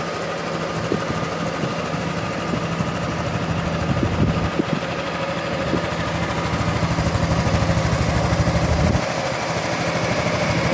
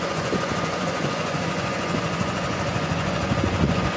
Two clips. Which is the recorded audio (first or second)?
first